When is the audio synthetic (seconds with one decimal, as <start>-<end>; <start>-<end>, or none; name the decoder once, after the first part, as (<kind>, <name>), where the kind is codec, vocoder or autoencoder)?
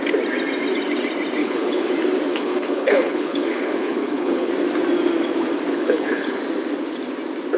1.4-1.9 (codec, HILCodec); 2.3-4.5; 5.7-6.4